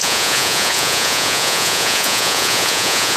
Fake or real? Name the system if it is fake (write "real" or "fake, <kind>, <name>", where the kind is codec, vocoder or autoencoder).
fake, vocoder, Vocos